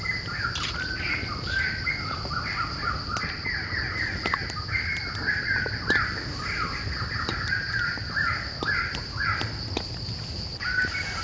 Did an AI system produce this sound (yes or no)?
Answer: no